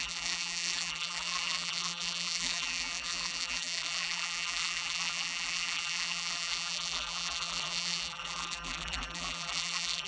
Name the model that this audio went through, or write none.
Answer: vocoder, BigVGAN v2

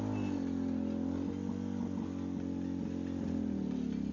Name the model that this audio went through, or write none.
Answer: none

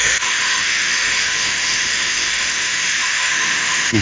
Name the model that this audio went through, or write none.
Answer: autoencoder, DAC-VAE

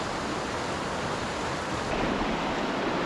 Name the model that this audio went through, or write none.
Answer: none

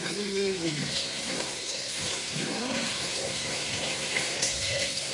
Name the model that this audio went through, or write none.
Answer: codec, SNAC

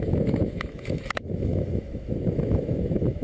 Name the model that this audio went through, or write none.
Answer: autoencoder, DAC-VAE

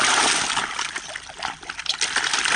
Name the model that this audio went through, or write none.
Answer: vocoder, BigVGAN v2